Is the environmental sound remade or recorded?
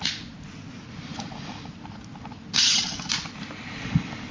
recorded